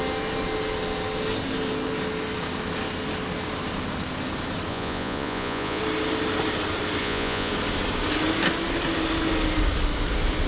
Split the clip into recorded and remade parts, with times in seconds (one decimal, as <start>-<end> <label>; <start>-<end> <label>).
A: 0.0-4.7 recorded; 4.7-5.8 remade; 5.8-7.0 recorded; 7.0-7.5 remade; 7.5-10.5 recorded